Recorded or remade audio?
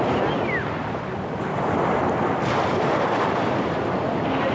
recorded